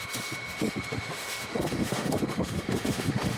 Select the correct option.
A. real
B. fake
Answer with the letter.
B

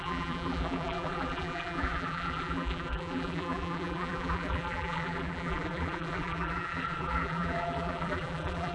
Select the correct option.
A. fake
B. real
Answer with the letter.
A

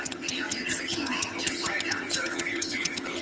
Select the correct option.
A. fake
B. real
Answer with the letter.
A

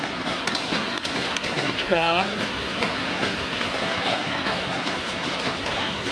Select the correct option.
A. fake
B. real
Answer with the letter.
A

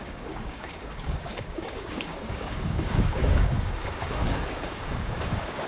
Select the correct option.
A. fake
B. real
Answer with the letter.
A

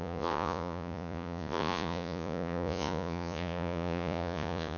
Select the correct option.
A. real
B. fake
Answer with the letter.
B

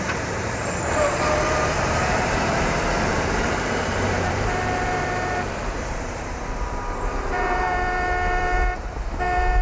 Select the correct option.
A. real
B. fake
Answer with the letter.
B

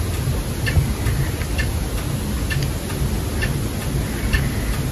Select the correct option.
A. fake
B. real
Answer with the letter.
B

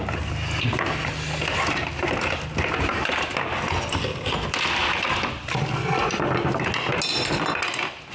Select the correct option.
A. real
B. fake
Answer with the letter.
A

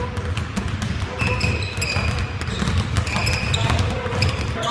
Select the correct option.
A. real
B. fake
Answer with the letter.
A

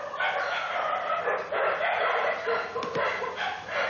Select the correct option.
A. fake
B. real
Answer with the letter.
A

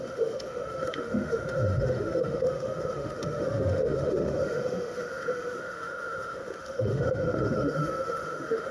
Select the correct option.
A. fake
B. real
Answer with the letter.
A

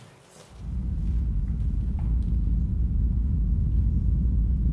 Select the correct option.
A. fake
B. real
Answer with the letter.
B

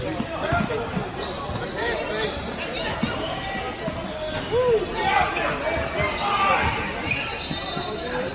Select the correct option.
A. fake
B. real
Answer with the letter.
B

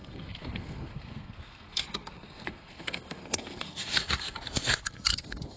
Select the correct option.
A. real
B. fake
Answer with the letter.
B